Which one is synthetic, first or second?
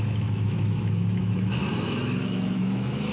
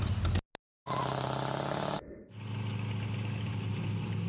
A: first